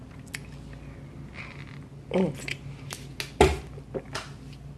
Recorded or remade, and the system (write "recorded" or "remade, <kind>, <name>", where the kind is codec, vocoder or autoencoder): recorded